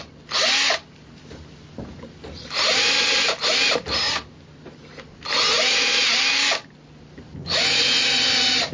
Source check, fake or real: real